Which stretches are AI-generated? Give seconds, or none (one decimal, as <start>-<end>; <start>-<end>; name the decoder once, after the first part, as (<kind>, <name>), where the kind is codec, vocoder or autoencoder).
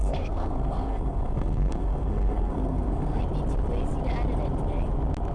0.0-3.2 (codec, SNAC)